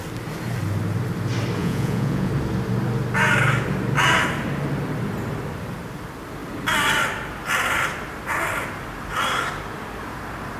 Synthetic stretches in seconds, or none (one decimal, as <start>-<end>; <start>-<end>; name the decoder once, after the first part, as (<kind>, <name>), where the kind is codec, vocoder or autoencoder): 1.6-2.3 (vocoder, Vocos)